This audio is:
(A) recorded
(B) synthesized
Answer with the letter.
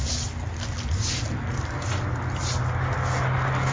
A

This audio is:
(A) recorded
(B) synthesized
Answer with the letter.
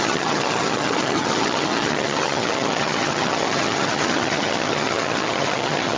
B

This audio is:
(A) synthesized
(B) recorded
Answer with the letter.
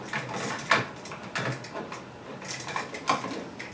B